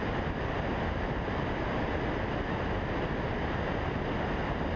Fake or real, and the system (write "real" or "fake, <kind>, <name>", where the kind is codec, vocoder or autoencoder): real